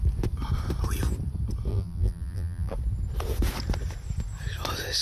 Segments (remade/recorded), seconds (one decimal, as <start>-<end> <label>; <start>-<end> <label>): 0.0-1.7 recorded; 1.7-2.7 remade; 2.7-5.0 recorded